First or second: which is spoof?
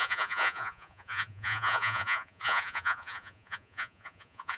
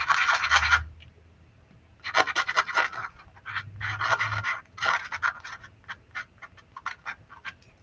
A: first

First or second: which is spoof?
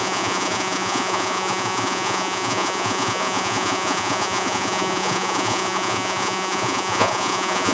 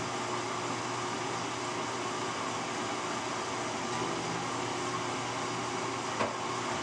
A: first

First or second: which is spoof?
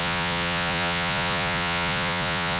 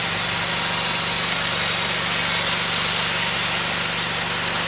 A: first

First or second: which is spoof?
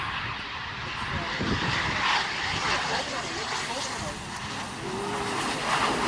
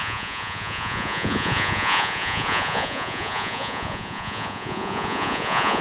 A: second